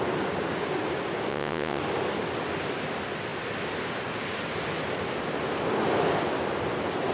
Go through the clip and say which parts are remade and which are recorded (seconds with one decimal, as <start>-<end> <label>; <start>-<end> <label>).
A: 0.0-1.3 recorded; 1.3-1.8 remade; 1.8-7.1 recorded